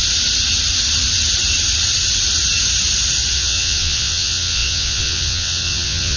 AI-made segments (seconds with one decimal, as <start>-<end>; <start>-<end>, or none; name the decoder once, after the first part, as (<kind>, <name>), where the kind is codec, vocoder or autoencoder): 3.3-6.2 (vocoder, WaveNeXt)